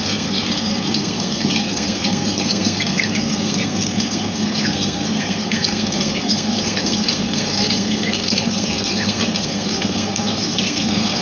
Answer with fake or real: fake